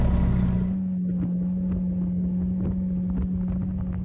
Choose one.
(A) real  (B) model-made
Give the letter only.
A